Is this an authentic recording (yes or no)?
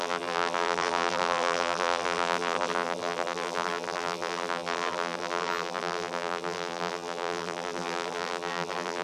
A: no